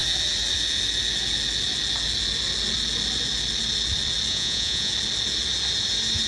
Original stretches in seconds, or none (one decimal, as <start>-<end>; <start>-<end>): 0.0-4.3; 4.9-6.3